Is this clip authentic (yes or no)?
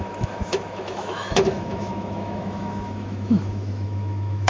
no